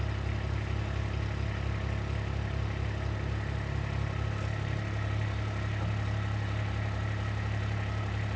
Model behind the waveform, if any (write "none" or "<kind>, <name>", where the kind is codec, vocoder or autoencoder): none